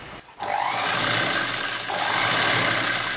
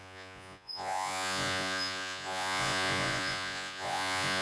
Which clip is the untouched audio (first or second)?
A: first